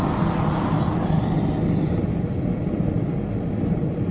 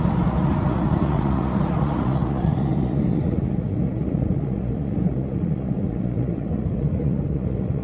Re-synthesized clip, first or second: second